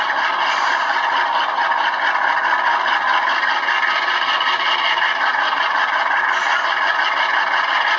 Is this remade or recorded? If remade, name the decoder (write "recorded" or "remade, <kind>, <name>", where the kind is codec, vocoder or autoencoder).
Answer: recorded